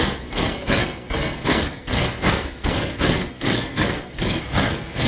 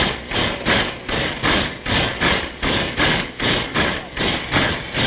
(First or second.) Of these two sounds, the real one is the second